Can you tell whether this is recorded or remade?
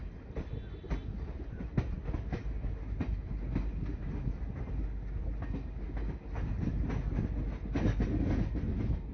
recorded